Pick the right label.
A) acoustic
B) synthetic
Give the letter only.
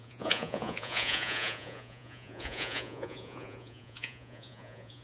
B